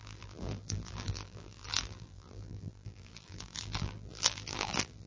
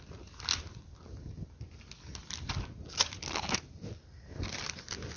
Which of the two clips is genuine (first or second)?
second